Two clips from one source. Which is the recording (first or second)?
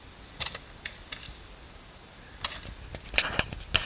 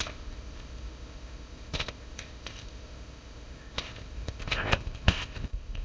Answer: first